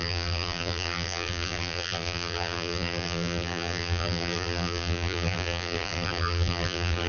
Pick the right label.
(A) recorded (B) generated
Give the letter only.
B